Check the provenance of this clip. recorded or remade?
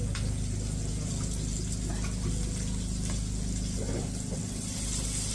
recorded